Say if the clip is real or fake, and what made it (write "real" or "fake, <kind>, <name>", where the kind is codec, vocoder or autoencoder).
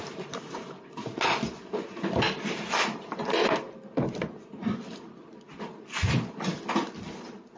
real